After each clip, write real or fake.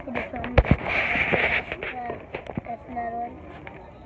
real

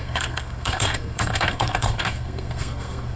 fake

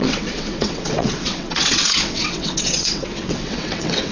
fake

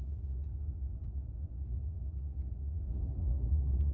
fake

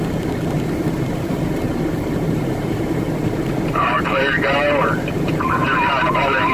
fake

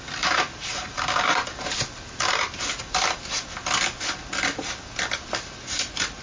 real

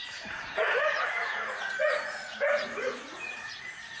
fake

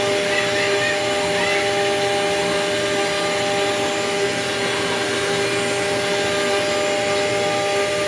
real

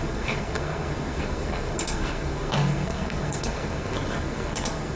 fake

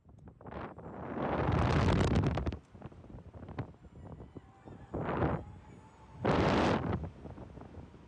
real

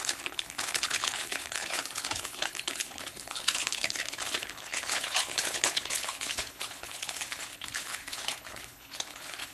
fake